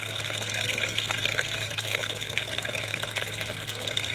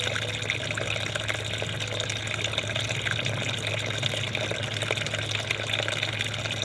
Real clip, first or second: second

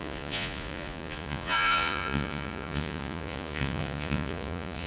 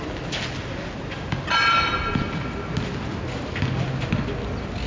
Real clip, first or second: second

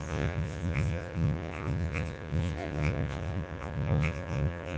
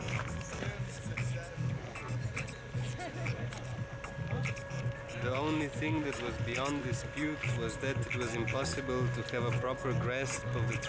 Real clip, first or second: second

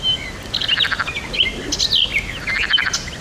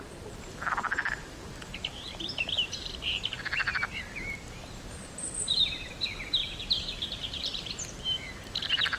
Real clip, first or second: first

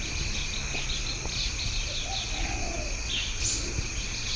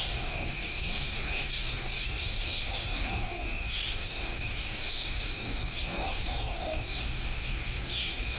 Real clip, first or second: first